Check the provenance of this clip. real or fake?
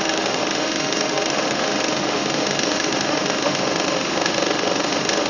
fake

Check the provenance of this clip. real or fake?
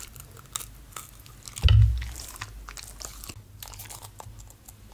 real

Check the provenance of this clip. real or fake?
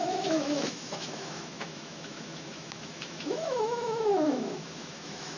fake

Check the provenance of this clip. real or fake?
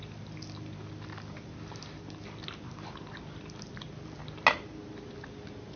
real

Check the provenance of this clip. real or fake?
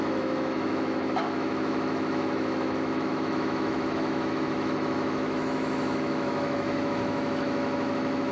fake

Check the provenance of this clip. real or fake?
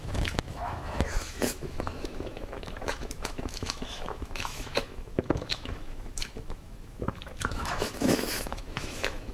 fake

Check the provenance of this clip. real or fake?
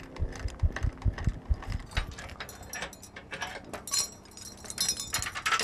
real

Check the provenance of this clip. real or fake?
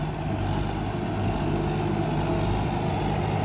real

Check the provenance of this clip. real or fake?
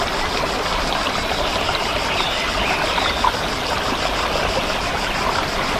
real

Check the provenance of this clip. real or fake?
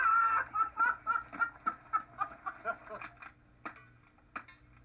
real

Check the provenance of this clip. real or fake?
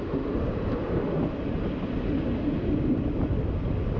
real